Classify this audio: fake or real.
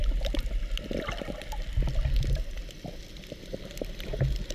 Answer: fake